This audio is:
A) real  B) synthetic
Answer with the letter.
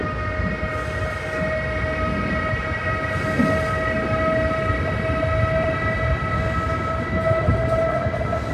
A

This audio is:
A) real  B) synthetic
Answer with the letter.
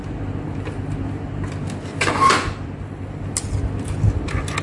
A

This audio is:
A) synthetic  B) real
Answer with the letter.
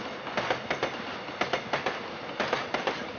B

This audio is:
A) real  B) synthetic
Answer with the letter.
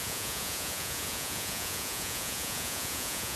B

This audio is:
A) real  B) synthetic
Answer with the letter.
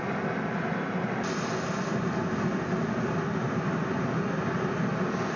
A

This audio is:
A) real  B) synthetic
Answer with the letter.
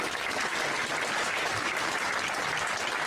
A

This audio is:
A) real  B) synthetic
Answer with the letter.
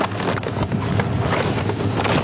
A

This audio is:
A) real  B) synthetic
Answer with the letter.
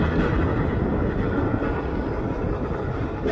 A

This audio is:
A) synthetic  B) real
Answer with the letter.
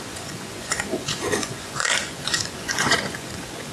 A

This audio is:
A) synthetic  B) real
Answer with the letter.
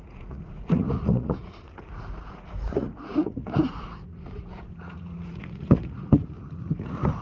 A